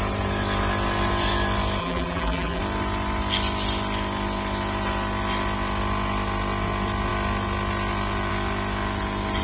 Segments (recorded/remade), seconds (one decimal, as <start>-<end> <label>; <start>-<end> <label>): 0.0-1.8 recorded; 1.8-2.6 remade; 2.6-9.4 recorded